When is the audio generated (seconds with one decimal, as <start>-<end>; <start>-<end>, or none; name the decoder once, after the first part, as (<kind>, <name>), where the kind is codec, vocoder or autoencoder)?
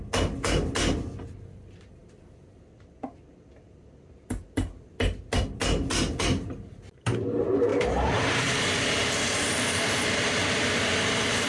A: 7.7-11.5 (vocoder, BigVGAN v2)